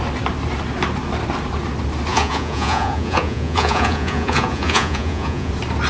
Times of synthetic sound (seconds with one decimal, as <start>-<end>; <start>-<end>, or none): 2.1-5.5